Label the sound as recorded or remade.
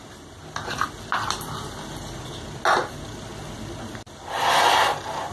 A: recorded